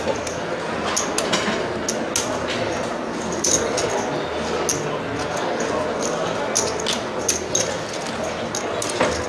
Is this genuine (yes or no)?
yes